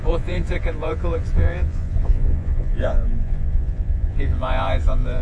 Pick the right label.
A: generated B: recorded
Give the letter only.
A